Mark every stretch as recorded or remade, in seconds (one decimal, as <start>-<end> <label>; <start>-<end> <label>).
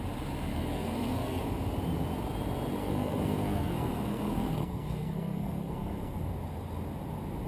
0.0-0.5 recorded; 0.5-1.4 remade; 1.4-2.8 recorded; 2.8-6.3 remade; 6.3-7.5 recorded